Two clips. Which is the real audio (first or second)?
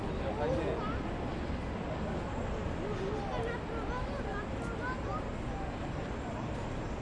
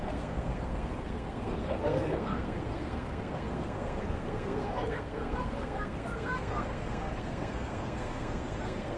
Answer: first